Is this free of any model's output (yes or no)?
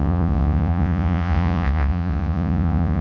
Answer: no